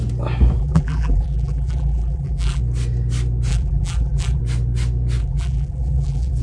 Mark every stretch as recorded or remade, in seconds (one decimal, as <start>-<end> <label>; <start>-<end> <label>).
0.0-0.6 recorded; 0.6-2.6 remade; 2.6-3.5 recorded; 3.5-4.4 remade; 4.4-5.2 recorded; 5.2-6.4 remade